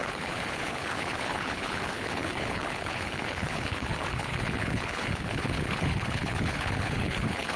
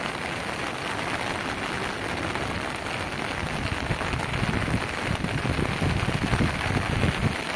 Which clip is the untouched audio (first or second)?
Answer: second